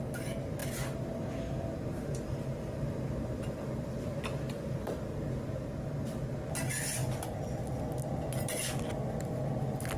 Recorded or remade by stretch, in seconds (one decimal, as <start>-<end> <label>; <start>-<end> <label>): 0.0-0.6 recorded; 0.6-5.5 remade; 5.5-10.0 recorded